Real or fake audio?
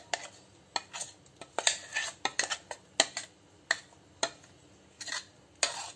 real